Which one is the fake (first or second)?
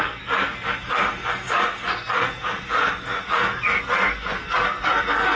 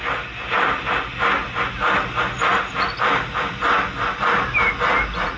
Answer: first